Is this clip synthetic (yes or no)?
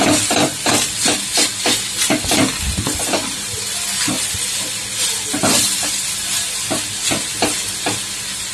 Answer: no